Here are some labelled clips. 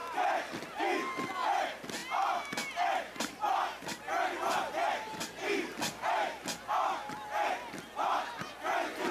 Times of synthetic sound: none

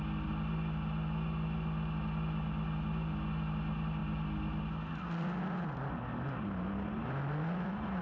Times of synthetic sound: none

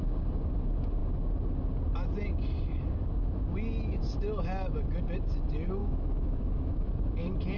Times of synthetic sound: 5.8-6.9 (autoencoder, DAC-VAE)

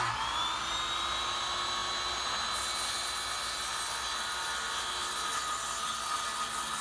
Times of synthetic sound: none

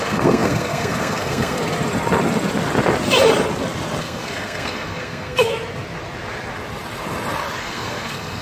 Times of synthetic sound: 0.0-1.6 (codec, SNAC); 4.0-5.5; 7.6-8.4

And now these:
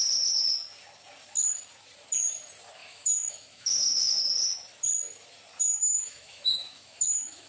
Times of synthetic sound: 2.8-4.2 (autoencoder, DAC-VAE); 5.6-7.5

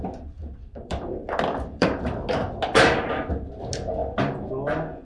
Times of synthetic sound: 0.4-2.0 (vocoder, BigVGAN v2); 4.0-4.5